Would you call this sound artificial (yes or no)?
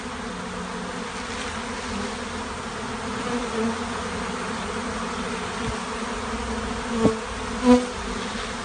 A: no